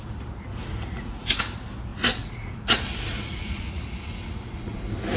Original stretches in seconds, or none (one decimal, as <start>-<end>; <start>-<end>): 0.0-0.5; 1.4-1.9; 4.8-5.2